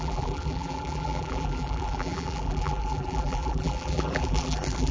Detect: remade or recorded remade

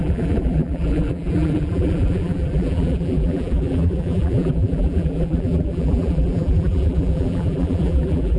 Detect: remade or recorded remade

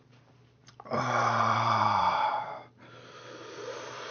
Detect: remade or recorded remade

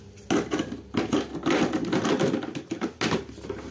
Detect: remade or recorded recorded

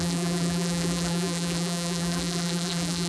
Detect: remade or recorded remade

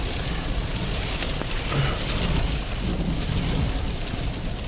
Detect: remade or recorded recorded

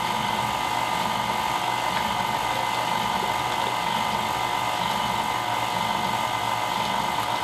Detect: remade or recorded recorded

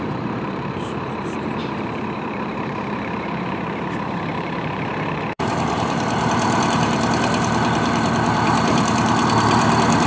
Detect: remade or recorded remade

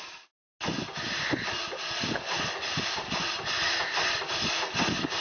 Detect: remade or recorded recorded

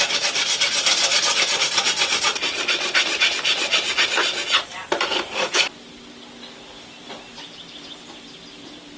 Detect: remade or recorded recorded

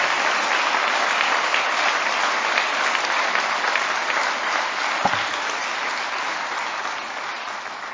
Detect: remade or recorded recorded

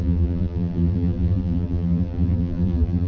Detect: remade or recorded remade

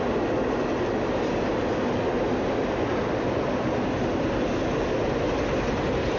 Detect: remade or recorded recorded